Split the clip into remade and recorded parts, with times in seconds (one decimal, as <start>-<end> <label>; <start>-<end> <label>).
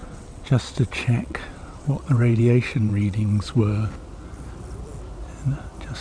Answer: 0.0-3.6 remade; 3.6-6.0 recorded